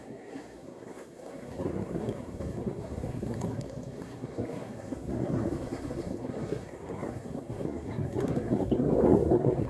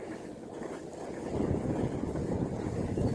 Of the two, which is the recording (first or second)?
second